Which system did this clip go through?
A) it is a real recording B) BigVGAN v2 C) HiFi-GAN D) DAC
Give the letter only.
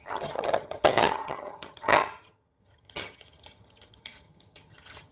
C